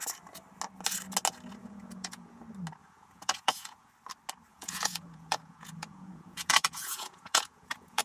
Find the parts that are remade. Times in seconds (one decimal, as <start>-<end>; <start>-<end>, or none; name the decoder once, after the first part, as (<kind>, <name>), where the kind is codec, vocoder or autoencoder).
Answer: 1.6-2.4 (vocoder, Vocos); 2.8-3.9; 4.5-8.0